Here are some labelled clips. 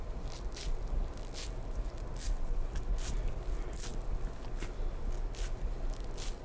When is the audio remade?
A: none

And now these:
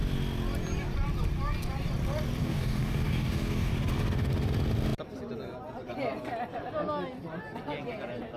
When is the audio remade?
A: 2.4-3.7 (codec, DAC)

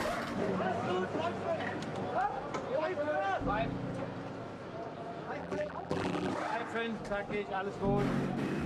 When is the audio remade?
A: 5.4-6.3 (vocoder, BigVGAN v2)

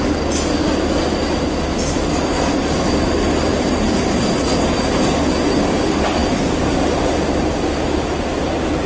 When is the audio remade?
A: none

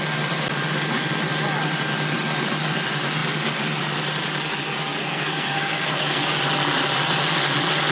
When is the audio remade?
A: 5.0-6.2 (codec, SNAC)

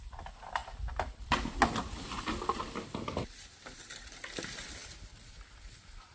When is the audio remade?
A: none